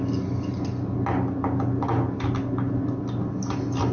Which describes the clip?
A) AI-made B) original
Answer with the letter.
B